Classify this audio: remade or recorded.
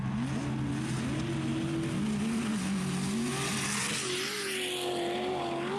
recorded